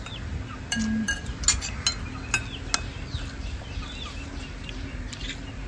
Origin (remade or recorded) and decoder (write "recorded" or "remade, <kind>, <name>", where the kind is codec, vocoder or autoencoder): recorded